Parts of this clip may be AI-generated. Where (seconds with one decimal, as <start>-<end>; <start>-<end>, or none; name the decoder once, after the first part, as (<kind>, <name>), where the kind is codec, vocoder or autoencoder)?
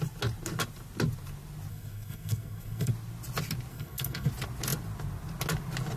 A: 1.7-2.9 (codec, SNAC); 3.7-4.3